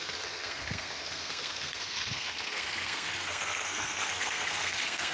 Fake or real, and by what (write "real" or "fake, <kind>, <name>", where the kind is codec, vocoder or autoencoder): fake, codec, SNAC